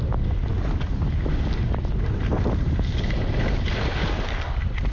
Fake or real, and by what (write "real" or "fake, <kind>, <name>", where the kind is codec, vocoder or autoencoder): real